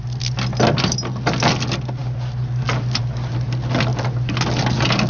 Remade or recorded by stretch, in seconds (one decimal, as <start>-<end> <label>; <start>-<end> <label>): 0.0-5.1 recorded